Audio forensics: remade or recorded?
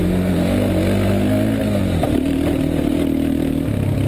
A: recorded